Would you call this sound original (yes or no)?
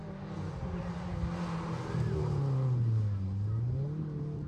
yes